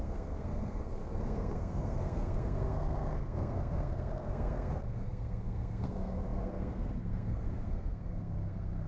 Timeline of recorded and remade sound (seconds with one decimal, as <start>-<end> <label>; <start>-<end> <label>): 0.0-8.9 remade